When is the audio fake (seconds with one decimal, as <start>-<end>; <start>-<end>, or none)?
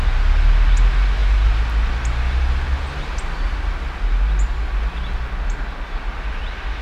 none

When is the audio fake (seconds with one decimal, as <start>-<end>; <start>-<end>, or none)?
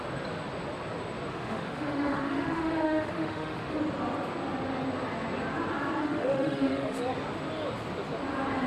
1.3-3.8; 6.0-7.0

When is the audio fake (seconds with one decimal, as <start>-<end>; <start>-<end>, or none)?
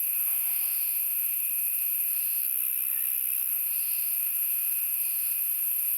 0.0-2.4; 3.5-6.0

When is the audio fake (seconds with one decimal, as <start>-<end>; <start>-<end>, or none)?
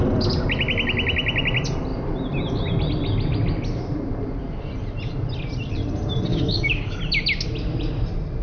6.3-7.0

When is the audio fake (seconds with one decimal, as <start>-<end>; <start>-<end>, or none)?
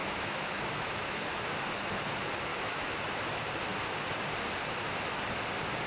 0.0-1.2; 2.5-3.0